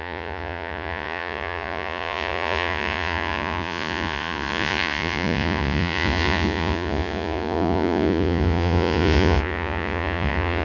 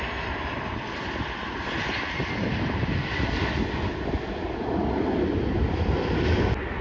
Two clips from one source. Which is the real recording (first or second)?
second